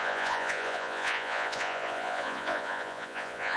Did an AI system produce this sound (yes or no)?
yes